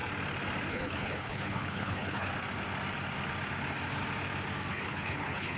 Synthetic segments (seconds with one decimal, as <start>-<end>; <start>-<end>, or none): 0.7-2.3; 4.7-5.6